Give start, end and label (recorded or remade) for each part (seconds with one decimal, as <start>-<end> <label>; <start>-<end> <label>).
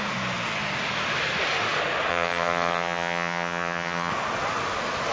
0.0-2.1 recorded; 2.1-4.1 remade; 4.1-5.1 recorded